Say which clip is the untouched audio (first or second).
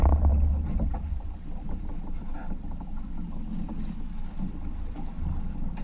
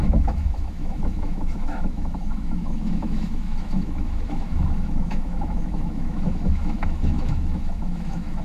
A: first